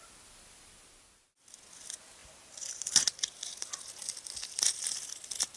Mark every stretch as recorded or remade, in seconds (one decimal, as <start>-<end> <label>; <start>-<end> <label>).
0.0-2.2 recorded; 2.2-2.8 remade; 2.8-4.0 recorded; 4.0-5.1 remade; 5.1-5.6 recorded